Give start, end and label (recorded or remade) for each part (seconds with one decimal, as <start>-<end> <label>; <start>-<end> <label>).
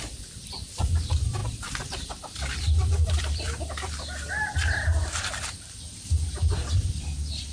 0.0-7.5 remade